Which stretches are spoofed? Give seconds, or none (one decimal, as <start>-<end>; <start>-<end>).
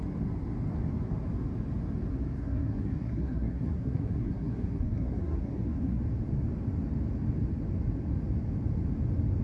2.4-6.0